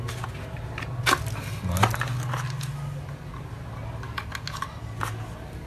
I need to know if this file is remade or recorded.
recorded